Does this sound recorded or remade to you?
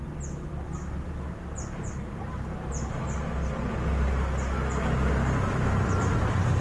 recorded